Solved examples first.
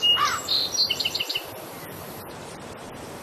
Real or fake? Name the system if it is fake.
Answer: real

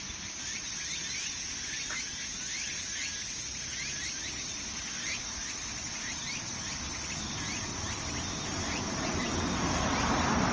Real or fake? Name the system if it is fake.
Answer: real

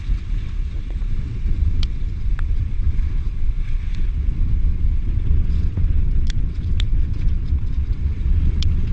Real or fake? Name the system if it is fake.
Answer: fake, vocoder, WaveNeXt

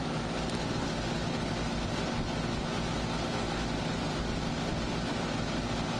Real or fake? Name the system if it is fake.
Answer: real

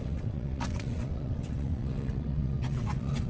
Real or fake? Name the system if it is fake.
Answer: fake, vocoder, WaveNeXt